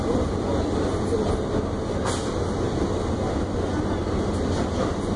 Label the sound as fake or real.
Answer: real